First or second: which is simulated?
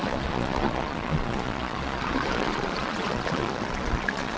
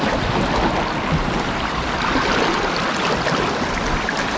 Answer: first